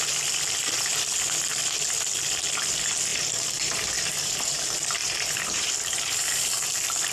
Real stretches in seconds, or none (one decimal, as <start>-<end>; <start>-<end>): 0.0-3.1; 4.6-5.0; 5.7-7.1